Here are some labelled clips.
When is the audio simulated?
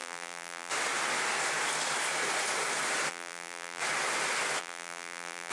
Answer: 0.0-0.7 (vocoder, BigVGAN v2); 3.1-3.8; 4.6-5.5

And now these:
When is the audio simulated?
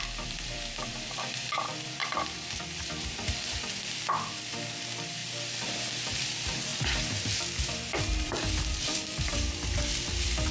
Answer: 0.0-6.7 (vocoder, BigVGAN v2); 7.6-10.5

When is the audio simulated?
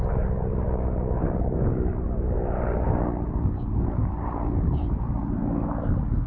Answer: none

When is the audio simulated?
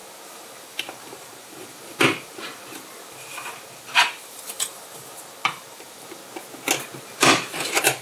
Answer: 0.0-6.2 (vocoder, BigVGAN v2); 7.0-8.0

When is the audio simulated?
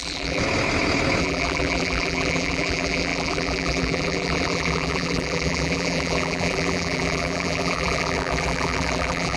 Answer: 0.0-0.4 (vocoder, BigVGAN v2); 1.2-9.4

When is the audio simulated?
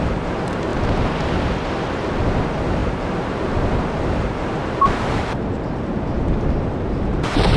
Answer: 0.0-0.7 (vocoder, BigVGAN v2); 2.4-7.6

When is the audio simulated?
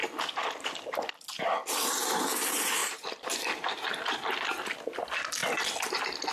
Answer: 0.0-0.8 (vocoder, BigVGAN v2); 2.8-3.5; 5.4-6.3